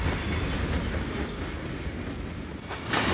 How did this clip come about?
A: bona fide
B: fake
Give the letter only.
A